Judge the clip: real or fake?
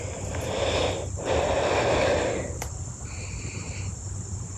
real